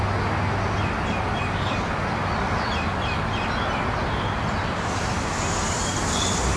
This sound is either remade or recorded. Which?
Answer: recorded